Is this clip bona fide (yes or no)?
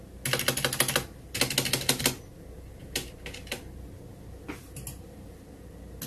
yes